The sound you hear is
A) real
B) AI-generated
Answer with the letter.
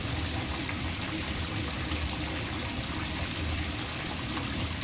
B